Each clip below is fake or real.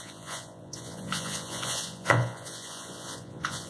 fake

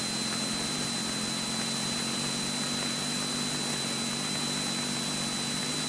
real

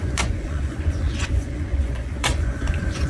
fake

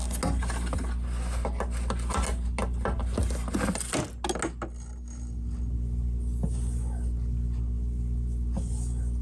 real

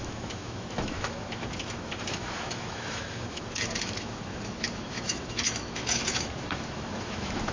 fake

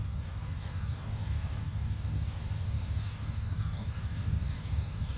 fake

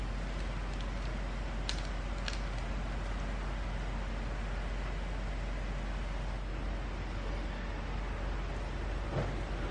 real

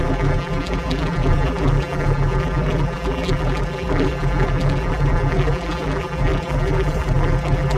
fake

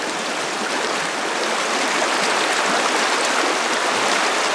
real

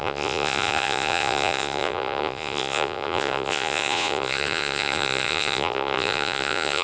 fake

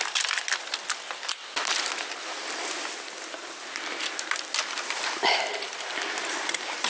fake